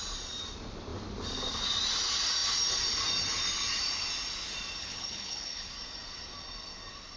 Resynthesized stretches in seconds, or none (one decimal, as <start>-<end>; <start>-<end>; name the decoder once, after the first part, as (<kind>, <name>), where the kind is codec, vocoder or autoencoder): 4.8-5.7 (codec, HILCodec)